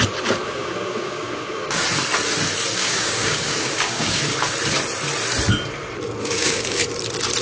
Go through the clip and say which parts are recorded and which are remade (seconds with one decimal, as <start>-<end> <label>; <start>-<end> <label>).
0.0-0.4 recorded; 0.4-1.8 remade; 1.8-2.7 recorded; 2.7-4.2 remade; 4.2-6.2 recorded; 6.2-6.8 remade; 6.8-7.4 recorded